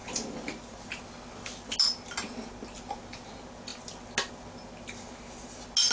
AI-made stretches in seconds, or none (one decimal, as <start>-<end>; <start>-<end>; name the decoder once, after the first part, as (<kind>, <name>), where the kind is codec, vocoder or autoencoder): 0.0-0.8 (vocoder, BigVGAN v2)